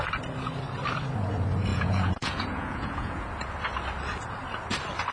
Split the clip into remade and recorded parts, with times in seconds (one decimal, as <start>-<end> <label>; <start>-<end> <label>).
0.0-1.7 recorded; 1.7-3.3 remade; 3.3-5.1 recorded